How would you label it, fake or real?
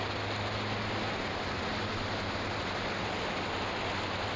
real